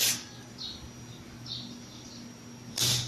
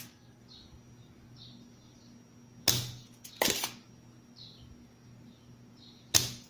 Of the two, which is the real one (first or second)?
second